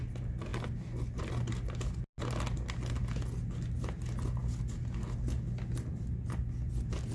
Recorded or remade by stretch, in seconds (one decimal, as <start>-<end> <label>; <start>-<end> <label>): 0.0-7.1 recorded

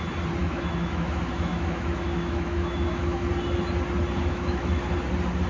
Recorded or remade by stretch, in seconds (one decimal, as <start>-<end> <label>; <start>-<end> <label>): 0.0-0.4 recorded; 0.4-3.3 remade; 3.3-4.2 recorded; 4.2-4.9 remade; 4.9-5.5 recorded

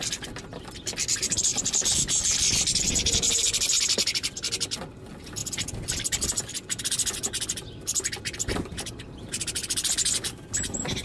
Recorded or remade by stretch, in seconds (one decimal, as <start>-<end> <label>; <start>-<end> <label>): 0.0-5.4 recorded; 5.4-6.8 remade; 6.8-11.0 recorded

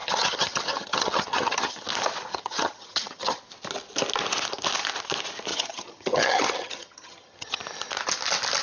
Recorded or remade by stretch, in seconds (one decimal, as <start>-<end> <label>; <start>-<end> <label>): 0.0-1.9 remade; 1.9-2.3 recorded; 2.3-3.4 remade; 3.4-5.5 recorded; 5.5-7.6 remade; 7.6-8.6 recorded

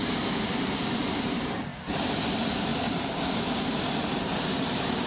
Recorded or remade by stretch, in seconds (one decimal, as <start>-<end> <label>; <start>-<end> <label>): 0.0-5.1 remade

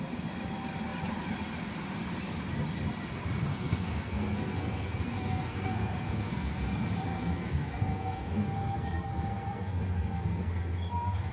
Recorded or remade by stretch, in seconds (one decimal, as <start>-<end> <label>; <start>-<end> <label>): 0.0-3.5 recorded; 3.5-6.6 remade; 6.6-7.1 recorded; 7.1-11.3 remade